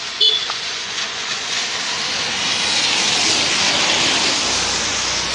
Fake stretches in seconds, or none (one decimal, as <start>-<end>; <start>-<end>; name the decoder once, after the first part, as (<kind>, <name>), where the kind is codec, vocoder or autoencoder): 0.0-1.6 (vocoder, Vocos); 4.8-5.3